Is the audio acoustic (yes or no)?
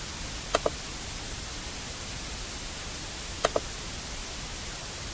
yes